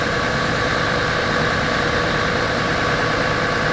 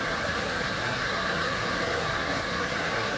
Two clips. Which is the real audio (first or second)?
first